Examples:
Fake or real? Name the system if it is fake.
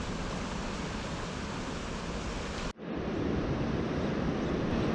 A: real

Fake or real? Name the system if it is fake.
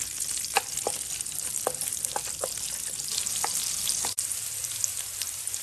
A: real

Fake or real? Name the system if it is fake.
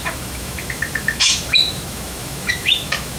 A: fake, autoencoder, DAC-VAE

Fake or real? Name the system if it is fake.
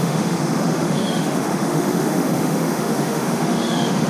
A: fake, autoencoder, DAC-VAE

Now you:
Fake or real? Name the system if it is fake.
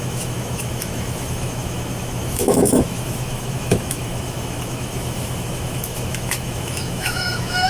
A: fake, autoencoder, DAC-VAE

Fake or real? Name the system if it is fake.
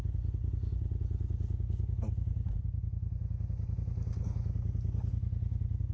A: real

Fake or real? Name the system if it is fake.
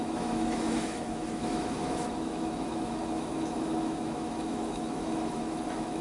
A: fake, autoencoder, DAC-VAE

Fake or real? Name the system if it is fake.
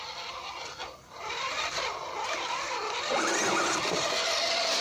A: real